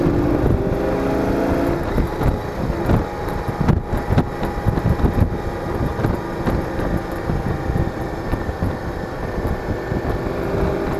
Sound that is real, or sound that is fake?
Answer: real